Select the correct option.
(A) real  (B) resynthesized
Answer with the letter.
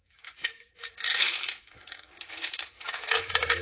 B